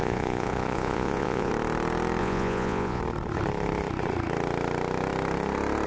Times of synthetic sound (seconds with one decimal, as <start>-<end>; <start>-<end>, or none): 0.0-1.5; 2.2-3.0